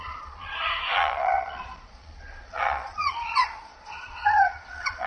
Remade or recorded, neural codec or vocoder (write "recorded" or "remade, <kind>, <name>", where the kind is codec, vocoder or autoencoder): remade, vocoder, Vocos